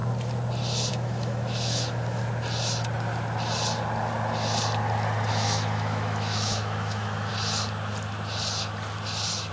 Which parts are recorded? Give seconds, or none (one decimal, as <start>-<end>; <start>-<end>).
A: 0.0-0.9; 2.2-5.3; 7.3-9.5